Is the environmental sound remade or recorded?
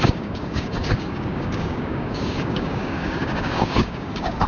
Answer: remade